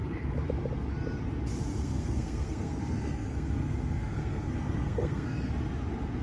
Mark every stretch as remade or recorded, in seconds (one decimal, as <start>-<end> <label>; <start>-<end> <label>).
0.0-1.8 recorded; 1.8-5.5 remade; 5.5-6.2 recorded